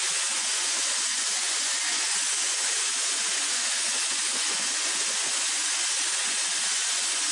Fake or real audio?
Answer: fake